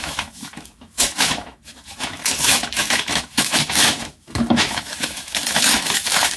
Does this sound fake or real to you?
fake